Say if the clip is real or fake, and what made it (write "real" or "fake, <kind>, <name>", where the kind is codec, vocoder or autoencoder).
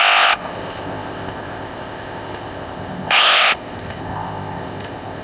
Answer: fake, codec, ZipCodec